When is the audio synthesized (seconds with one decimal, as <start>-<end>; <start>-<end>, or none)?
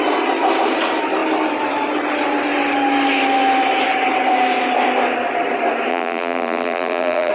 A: 5.9-7.3